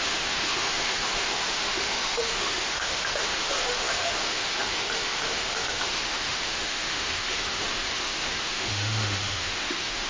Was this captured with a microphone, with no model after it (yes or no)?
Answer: no